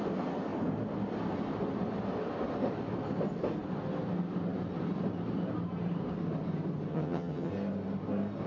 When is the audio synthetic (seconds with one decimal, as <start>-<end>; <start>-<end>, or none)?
6.9-7.5